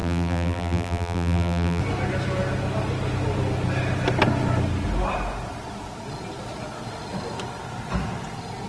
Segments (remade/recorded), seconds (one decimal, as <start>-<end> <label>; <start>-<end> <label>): 0.0-1.8 remade; 1.8-8.7 recorded